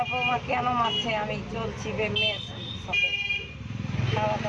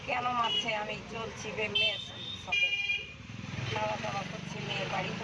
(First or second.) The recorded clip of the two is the first